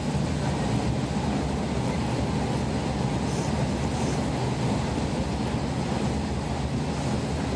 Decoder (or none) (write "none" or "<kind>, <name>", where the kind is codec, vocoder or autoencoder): none